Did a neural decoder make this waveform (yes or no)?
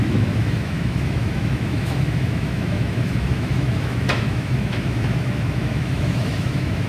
yes